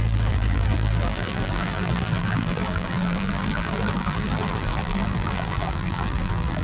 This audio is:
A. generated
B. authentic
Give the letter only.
A